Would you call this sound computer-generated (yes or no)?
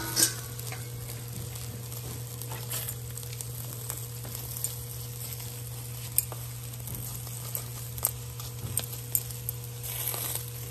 no